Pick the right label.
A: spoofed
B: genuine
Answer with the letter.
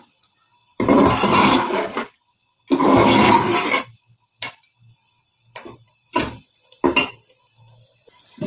B